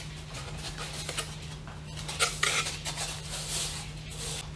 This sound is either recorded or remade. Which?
recorded